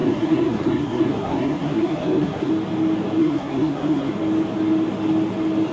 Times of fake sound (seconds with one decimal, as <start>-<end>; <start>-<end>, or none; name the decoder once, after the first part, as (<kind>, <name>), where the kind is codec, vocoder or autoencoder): 0.0-2.5 (codec, SNAC); 3.2-4.1